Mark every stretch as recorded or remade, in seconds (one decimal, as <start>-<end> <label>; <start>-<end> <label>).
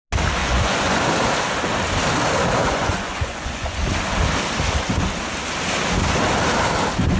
0.0-0.4 recorded; 0.4-1.0 remade; 1.0-2.6 recorded; 2.6-3.8 remade; 3.8-7.2 recorded